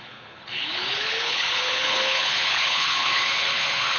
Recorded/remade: remade